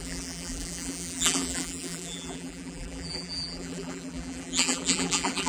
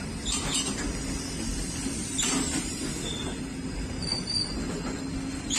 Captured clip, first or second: second